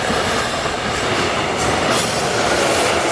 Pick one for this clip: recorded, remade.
recorded